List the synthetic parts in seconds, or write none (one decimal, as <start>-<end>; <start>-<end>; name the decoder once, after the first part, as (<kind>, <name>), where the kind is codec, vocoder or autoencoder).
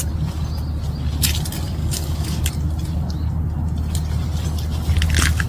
1.8-2.5 (codec, DAC)